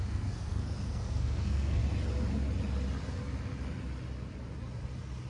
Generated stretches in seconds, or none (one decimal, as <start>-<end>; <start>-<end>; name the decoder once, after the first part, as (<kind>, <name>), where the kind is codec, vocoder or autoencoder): 0.0-1.8 (codec, SNAC)